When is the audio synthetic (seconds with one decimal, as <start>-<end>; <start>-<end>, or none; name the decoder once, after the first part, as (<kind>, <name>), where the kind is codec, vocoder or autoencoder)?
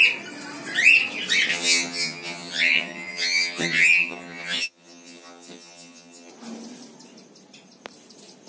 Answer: 1.5-6.3 (vocoder, HiFi-GAN)